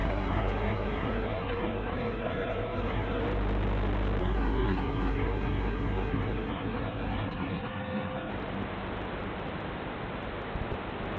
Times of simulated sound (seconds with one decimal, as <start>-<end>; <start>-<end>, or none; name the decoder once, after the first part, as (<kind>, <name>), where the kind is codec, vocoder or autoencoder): 0.0-3.2 (codec, SNAC); 4.2-8.3